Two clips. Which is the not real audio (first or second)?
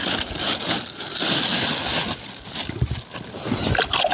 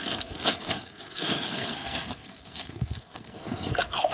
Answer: second